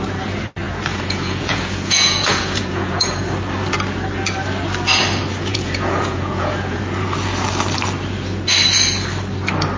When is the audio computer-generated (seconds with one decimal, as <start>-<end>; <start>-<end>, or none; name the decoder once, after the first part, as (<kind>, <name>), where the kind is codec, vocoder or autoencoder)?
0.9-3.2 (vocoder, Vocos); 5.5-6.8